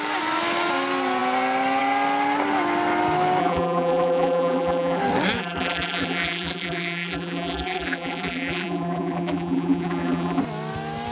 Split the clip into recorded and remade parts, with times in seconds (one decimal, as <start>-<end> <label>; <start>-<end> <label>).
0.0-3.4 recorded; 3.4-5.0 remade; 5.0-5.4 recorded; 5.4-10.4 remade; 10.4-11.1 recorded